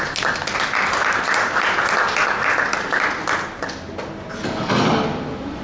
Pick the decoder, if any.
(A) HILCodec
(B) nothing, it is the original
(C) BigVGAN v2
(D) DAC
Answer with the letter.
B